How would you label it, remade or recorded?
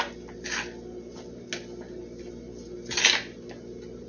recorded